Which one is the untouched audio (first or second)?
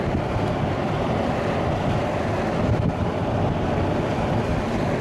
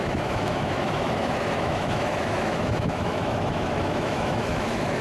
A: first